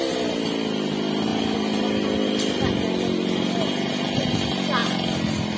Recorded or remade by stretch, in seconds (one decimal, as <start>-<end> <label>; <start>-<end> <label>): 0.0-5.6 recorded